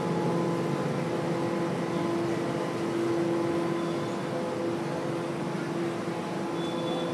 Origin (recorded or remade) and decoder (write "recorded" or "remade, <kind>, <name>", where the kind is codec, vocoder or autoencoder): recorded